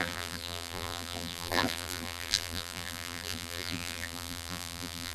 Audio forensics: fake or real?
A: fake